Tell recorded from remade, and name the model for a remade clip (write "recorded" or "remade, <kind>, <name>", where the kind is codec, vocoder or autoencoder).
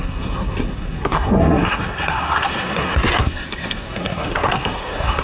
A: remade, codec, SNAC